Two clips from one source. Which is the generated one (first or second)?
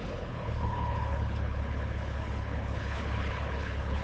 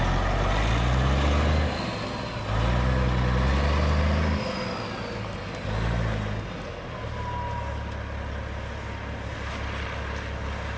first